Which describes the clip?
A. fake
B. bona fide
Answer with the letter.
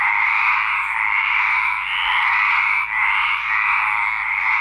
B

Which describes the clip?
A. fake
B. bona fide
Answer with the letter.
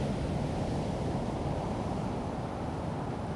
B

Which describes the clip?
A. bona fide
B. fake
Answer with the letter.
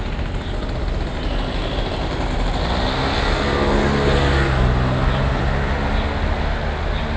A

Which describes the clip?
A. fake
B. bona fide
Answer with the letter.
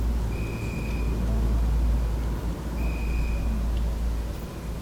B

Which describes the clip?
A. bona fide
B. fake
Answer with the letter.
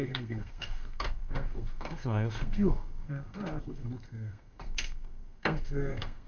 B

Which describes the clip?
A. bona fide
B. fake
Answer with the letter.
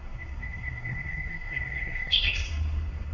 B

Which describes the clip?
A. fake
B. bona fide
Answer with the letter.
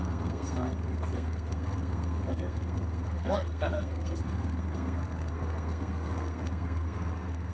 A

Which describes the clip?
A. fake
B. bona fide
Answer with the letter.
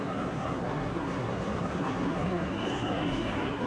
A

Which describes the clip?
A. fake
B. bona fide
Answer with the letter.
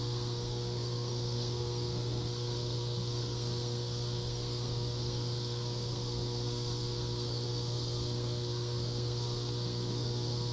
A